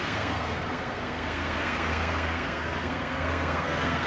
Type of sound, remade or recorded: remade